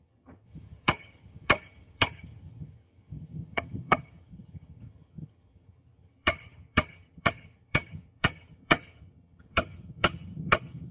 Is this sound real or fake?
fake